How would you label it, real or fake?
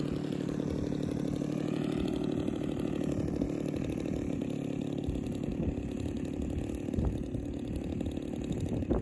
real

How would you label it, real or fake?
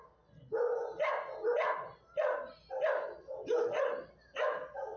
real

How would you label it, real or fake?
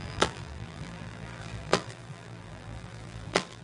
fake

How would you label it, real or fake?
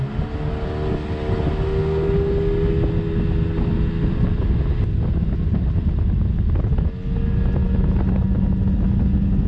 real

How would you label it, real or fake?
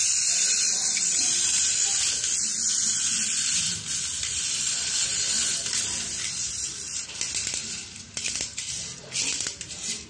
real